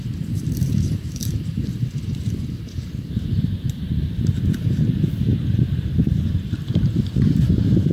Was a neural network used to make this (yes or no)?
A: yes